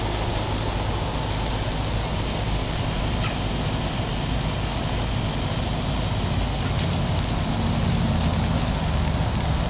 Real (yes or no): yes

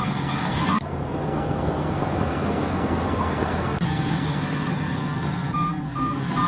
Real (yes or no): no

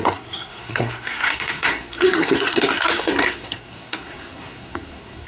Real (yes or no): no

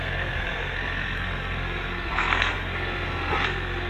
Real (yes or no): no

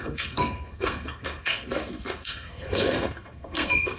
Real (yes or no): no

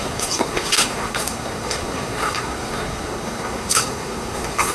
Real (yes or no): no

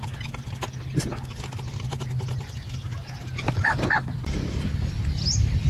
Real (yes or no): yes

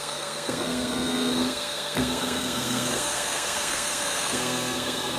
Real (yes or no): no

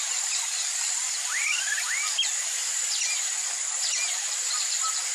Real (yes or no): yes